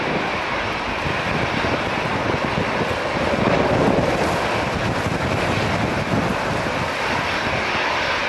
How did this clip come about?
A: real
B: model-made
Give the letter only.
A